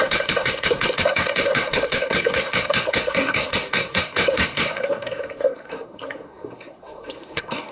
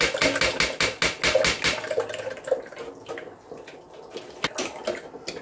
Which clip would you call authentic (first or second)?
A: second